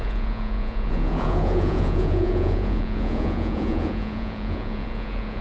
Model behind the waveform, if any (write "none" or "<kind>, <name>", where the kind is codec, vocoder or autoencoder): vocoder, Vocos